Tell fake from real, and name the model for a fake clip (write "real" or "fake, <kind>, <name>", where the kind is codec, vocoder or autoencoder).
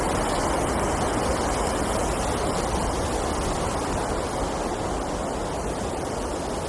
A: real